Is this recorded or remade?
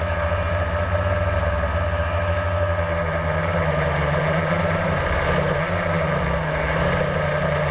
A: recorded